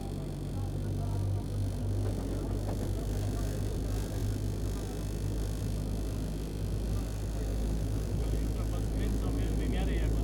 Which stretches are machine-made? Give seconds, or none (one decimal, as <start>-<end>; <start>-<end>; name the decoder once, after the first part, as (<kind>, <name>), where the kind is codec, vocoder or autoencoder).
7.5-8.2 (autoencoder, DAC-VAE)